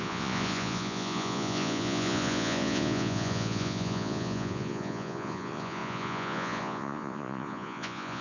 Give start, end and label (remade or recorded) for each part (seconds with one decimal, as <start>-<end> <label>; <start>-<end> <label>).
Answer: 0.0-8.2 remade